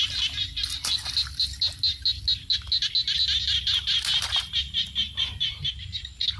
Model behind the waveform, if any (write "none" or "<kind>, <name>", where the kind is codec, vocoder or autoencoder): none